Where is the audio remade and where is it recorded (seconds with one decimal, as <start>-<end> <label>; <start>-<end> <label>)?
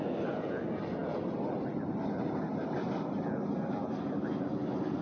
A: 0.0-5.0 recorded